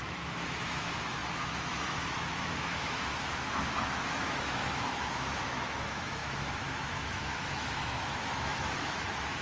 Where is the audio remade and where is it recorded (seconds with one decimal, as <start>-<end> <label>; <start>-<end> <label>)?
0.0-9.4 remade